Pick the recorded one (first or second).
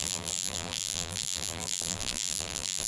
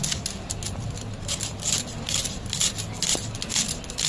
second